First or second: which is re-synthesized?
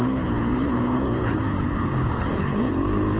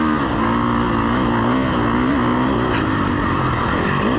first